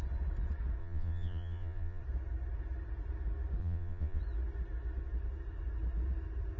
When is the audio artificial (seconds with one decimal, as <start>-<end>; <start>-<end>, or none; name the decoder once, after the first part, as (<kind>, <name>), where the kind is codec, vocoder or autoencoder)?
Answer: 0.8-2.0 (vocoder, Vocos); 3.6-4.2